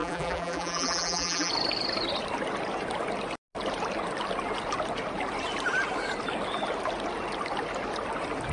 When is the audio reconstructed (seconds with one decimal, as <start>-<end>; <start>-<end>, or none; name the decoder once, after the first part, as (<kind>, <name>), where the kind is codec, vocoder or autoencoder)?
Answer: 0.0-1.5 (vocoder, BigVGAN v2)

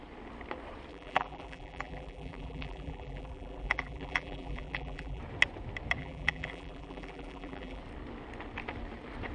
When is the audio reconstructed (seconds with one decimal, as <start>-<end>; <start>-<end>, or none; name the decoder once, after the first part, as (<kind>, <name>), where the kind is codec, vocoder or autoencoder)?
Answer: 0.9-5.2 (vocoder, BigVGAN v2); 6.0-7.8

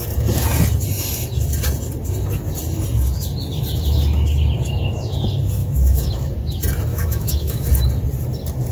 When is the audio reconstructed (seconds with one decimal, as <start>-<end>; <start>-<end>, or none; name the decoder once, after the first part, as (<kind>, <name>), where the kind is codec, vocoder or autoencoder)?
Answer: 5.6-6.3 (autoencoder, DAC-VAE); 6.9-7.7

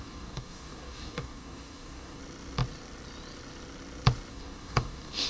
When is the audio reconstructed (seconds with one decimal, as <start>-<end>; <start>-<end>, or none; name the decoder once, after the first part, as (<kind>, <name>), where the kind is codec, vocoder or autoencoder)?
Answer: 0.0-2.2 (codec, DAC); 4.3-5.3

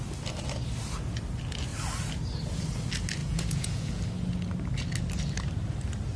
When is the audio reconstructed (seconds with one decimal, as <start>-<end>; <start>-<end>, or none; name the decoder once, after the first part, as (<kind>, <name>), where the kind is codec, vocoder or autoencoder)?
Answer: 3.2-3.9 (vocoder, Vocos)